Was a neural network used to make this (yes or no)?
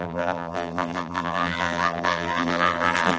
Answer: yes